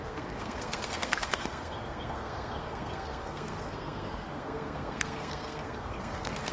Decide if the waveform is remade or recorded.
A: remade